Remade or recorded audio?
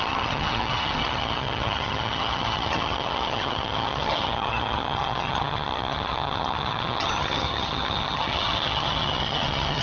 remade